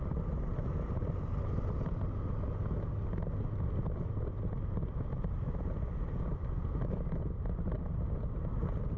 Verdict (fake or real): real